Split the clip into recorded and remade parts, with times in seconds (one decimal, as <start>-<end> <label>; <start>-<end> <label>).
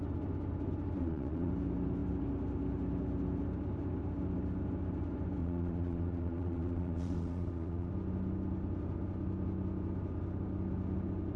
0.0-1.0 recorded; 1.0-1.5 remade; 1.5-5.4 recorded; 5.4-7.9 remade; 7.9-11.4 recorded